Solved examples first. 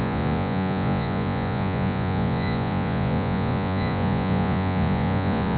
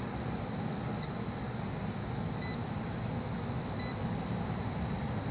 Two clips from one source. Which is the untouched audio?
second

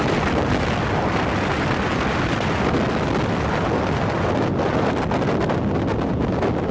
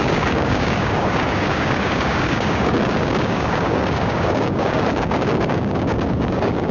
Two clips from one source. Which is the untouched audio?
first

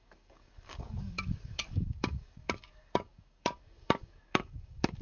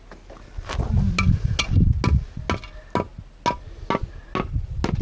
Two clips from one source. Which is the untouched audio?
second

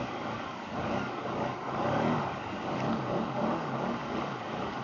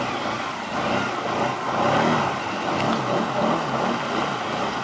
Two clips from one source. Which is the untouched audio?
second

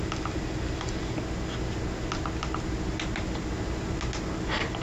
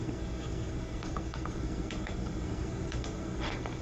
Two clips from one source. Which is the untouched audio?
first